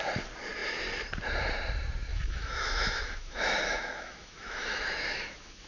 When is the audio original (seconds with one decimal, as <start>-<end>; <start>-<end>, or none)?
0.0-2.1